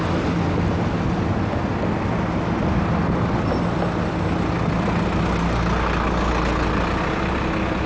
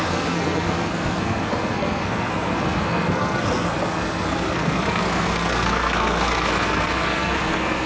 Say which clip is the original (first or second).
first